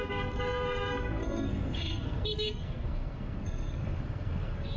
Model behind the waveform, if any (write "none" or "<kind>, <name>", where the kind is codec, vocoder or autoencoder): codec, SNAC